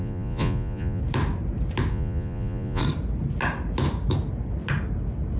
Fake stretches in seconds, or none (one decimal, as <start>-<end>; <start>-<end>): 0.0-1.0; 1.9-2.8